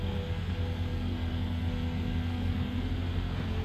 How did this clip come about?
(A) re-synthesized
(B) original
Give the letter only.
A